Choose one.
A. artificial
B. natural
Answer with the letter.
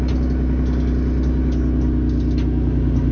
B